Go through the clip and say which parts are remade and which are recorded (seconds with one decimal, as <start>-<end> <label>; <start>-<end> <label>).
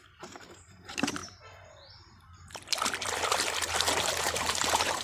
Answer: 0.0-1.2 remade; 1.2-4.2 recorded; 4.2-5.0 remade